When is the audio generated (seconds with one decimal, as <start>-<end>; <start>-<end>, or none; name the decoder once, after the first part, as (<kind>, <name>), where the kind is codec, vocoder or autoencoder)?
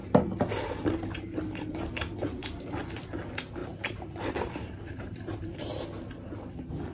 3.6-5.6 (vocoder, BigVGAN v2)